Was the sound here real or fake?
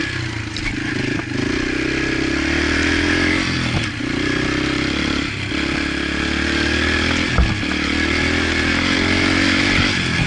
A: real